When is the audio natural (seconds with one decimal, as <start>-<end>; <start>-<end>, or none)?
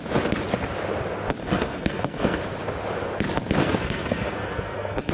0.0-1.4; 2.4-3.6